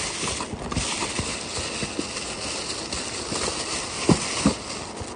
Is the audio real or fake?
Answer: real